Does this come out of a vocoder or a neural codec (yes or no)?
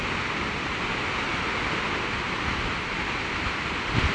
no